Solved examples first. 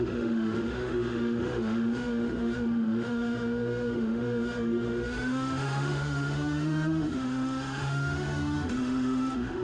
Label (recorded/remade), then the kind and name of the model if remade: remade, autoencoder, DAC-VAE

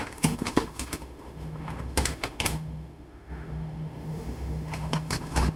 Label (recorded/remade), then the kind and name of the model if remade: remade, autoencoder, DAC-VAE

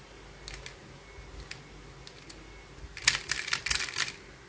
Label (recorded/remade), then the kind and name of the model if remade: recorded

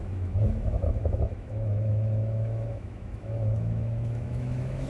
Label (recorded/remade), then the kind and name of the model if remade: remade, autoencoder, DAC-VAE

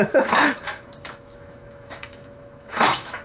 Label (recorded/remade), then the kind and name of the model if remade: remade, autoencoder, DAC-VAE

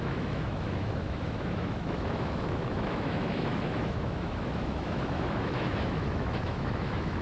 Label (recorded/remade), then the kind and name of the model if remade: remade, autoencoder, DAC-VAE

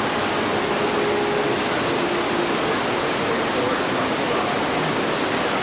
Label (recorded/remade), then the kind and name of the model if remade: recorded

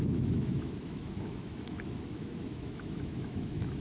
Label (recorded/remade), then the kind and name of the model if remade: remade, autoencoder, DAC-VAE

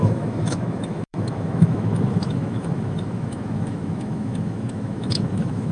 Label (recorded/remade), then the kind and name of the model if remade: remade, autoencoder, DAC-VAE